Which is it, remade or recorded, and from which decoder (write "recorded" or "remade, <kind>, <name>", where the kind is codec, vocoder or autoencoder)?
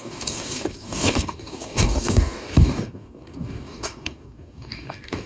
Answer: remade, codec, DAC